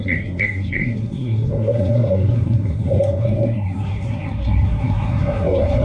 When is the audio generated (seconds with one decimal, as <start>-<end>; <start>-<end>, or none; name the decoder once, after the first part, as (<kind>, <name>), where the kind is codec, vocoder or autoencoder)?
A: 0.0-5.8 (codec, SNAC)